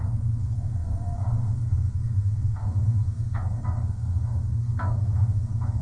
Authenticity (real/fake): fake